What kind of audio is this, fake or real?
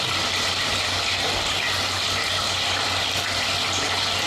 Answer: real